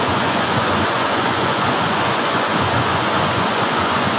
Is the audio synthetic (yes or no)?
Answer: yes